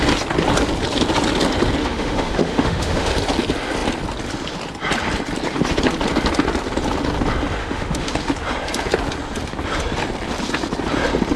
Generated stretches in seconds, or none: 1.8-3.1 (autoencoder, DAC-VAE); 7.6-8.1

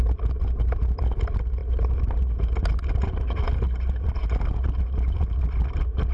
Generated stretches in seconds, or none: none

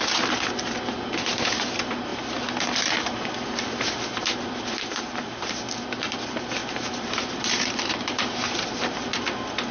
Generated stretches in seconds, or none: 6.6-9.2 (vocoder, BigVGAN v2)